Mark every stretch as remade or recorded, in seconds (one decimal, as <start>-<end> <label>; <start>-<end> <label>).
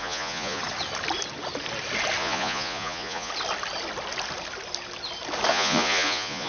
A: 0.0-0.6 remade; 0.6-2.2 recorded; 2.2-3.3 remade; 3.3-5.5 recorded; 5.5-6.5 remade